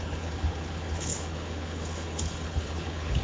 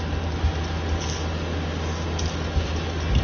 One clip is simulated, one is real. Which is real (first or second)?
second